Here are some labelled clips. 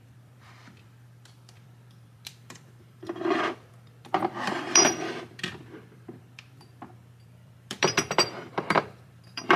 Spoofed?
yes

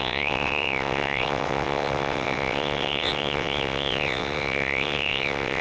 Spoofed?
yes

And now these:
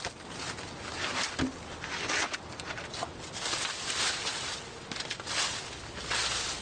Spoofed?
no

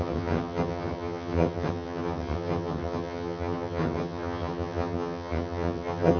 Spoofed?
yes